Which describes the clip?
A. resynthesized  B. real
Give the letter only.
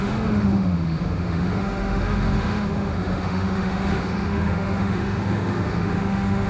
A